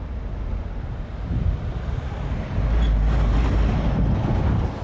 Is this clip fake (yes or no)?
no